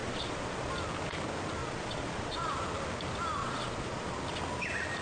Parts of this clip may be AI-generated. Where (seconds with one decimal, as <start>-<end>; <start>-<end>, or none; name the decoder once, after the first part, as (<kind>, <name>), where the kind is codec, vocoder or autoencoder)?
0.0-0.7 (vocoder, Vocos); 1.6-2.5; 3.4-4.2